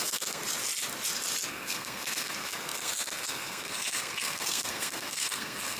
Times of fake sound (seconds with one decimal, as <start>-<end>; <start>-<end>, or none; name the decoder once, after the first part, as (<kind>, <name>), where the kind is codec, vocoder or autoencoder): 0.0-0.4 (codec, SNAC); 1.5-5.8